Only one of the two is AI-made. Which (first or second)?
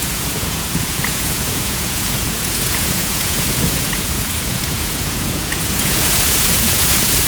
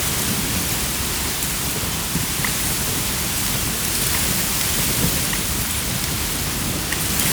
first